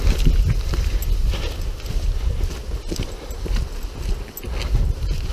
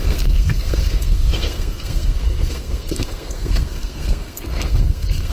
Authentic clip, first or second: first